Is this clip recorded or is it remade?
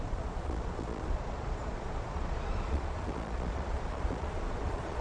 remade